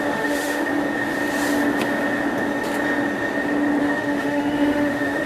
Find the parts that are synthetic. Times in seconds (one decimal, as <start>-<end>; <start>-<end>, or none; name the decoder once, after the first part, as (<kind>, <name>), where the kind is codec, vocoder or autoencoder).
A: 0.0-0.7 (autoencoder, DAC-VAE); 3.8-5.3